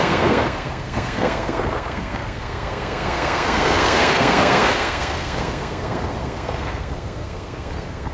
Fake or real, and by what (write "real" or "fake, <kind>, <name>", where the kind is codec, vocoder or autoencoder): fake, codec, SNAC